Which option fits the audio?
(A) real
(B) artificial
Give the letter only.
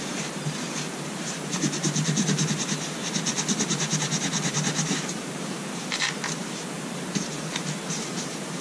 B